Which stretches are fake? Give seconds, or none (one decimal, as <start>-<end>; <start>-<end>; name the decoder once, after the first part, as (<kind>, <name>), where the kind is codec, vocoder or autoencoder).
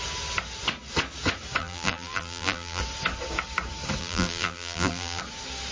1.6-2.8 (vocoder, BigVGAN v2); 4.0-5.2